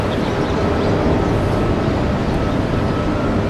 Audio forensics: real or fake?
real